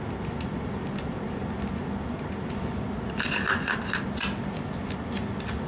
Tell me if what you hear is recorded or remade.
recorded